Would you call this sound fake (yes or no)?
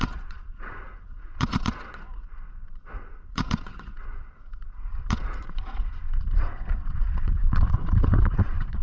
yes